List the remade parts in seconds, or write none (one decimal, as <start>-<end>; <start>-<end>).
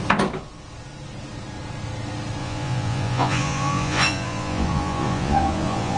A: 2.4-6.0